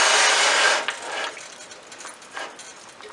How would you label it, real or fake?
real